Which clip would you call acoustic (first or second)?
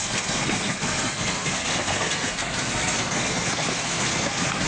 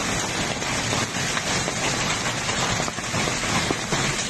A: second